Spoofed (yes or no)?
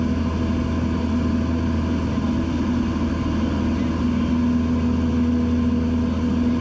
no